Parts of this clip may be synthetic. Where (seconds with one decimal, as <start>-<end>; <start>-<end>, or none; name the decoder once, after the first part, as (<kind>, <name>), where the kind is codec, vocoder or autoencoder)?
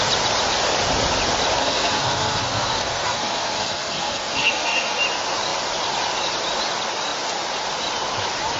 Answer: 1.6-5.0 (codec, SNAC)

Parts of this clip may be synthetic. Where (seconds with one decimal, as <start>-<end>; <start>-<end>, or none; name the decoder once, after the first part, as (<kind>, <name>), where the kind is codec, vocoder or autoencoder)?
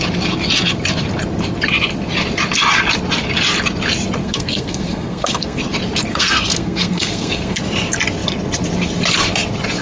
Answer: 4.2-5.6 (codec, SNAC); 6.1-7.6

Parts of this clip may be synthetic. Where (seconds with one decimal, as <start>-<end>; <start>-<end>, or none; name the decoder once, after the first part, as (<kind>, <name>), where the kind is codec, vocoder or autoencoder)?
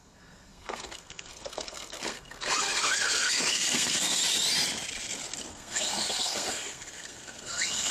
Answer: 0.0-4.2 (codec, SNAC); 5.5-7.9